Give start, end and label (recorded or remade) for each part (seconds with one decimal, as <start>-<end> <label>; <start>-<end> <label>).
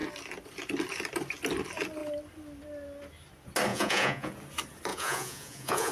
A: 0.0-3.7 recorded; 3.7-4.3 remade; 4.3-4.9 recorded; 4.9-5.9 remade